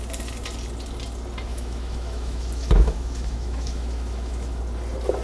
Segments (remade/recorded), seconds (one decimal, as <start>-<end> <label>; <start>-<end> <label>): 0.0-1.5 recorded; 1.5-4.6 remade; 4.6-5.2 recorded